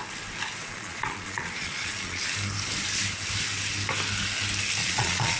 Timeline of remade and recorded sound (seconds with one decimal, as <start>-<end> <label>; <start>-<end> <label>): 0.0-0.6 recorded; 0.6-2.2 remade; 2.2-4.8 recorded; 4.8-5.4 remade